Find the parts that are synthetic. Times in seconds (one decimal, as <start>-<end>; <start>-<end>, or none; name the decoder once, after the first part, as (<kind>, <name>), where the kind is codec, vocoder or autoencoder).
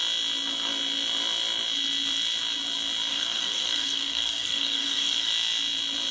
3.1-5.3 (codec, SNAC)